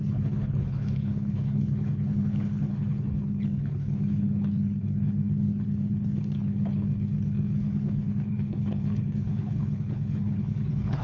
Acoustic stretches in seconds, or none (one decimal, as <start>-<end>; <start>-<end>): none